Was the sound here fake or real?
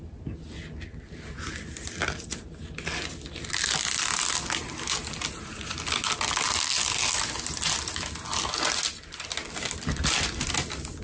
real